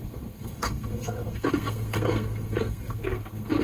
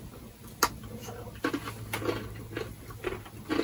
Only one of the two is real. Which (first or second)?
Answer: second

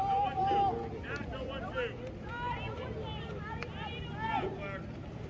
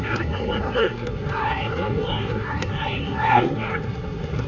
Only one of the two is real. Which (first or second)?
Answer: first